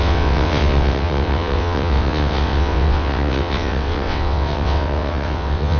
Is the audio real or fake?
fake